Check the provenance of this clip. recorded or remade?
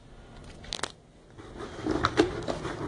recorded